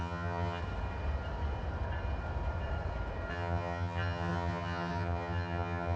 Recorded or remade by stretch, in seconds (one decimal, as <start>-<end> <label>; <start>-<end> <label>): 0.0-0.6 remade; 0.6-3.3 recorded; 3.3-6.0 remade